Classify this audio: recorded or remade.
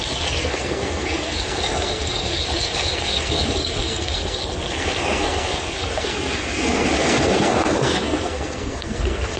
remade